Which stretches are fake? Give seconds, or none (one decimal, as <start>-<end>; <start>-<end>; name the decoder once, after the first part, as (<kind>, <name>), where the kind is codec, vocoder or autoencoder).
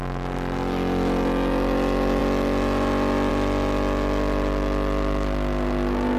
none